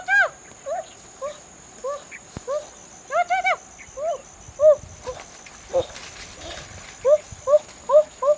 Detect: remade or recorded recorded